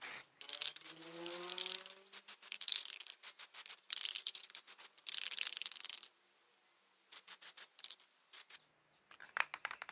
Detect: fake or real real